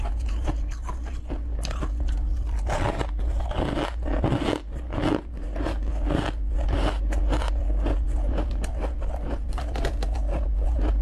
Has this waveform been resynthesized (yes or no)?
no